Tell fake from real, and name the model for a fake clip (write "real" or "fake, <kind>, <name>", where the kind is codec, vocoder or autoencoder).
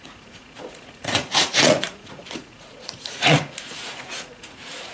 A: fake, vocoder, Vocos